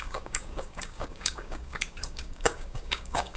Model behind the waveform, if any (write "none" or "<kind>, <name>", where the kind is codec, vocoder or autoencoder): codec, DAC